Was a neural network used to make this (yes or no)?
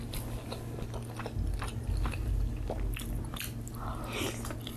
no